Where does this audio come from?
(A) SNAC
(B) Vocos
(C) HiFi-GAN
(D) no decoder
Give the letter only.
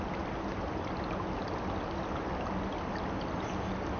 D